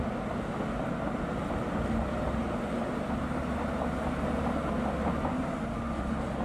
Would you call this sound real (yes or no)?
yes